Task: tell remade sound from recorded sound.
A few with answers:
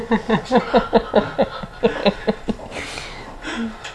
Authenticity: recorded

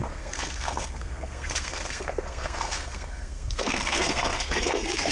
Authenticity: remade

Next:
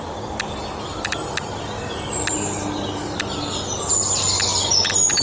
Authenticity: recorded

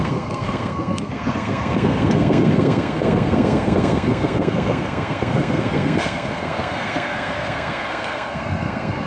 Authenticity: remade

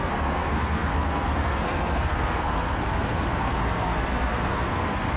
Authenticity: remade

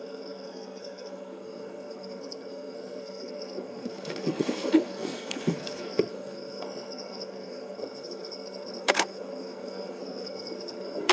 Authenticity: remade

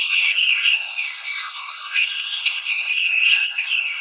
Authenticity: remade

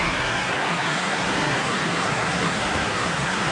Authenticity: remade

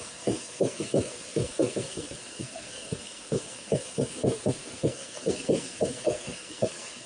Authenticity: remade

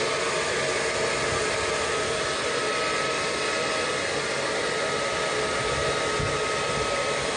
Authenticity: recorded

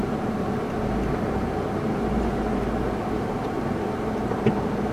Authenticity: recorded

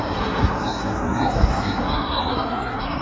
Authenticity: remade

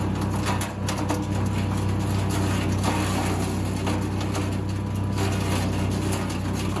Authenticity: recorded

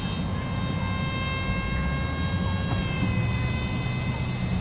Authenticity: recorded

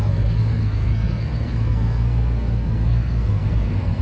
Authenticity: remade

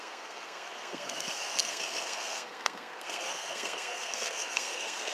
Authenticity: remade